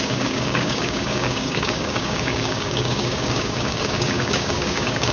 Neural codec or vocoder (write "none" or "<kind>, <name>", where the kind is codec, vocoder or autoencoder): codec, DAC